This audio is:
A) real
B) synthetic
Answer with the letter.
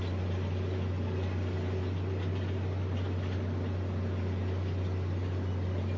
A